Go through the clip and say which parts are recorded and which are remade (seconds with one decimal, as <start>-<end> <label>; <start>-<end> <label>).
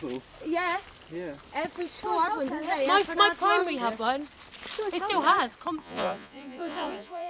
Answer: 0.0-5.8 recorded; 5.8-7.3 remade